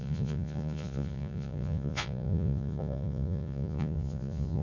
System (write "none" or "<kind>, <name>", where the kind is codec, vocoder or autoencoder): vocoder, Vocos